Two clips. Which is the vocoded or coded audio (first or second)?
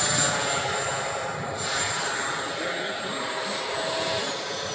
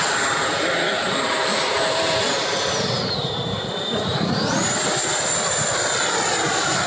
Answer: second